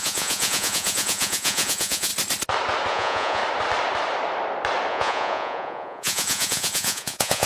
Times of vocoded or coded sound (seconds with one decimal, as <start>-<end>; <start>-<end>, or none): 0.0-2.1; 2.9-3.4; 4.9-7.5